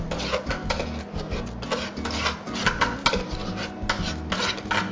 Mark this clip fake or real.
real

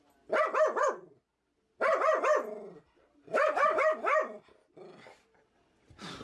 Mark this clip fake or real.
real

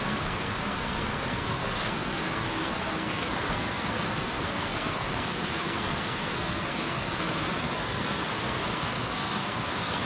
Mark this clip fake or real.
fake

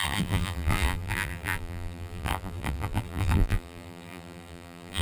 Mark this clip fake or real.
fake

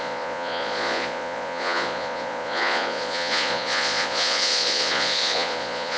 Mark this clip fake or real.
fake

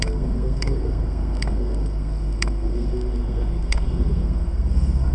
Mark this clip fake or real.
fake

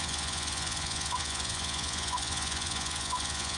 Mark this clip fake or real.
fake